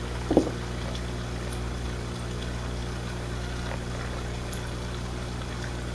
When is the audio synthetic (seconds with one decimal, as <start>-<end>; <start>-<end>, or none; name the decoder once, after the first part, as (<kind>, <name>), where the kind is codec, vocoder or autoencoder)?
none

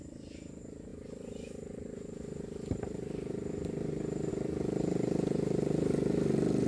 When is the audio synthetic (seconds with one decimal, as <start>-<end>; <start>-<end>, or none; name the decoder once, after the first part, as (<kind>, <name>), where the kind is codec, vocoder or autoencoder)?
none

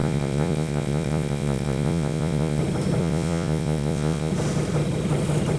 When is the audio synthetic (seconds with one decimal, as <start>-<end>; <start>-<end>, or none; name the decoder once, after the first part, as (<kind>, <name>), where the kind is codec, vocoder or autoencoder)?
0.0-2.6 (vocoder, Vocos); 3.0-4.3

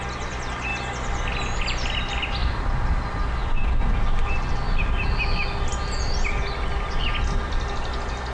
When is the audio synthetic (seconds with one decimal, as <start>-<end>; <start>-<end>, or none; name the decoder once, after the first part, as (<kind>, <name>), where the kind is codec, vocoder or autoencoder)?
none